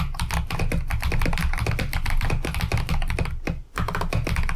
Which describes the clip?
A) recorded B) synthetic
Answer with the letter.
A